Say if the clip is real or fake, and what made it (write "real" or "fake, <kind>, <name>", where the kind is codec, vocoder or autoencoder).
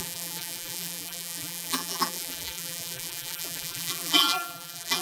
fake, vocoder, BigVGAN v2